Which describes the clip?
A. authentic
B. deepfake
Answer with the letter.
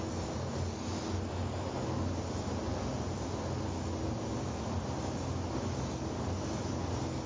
A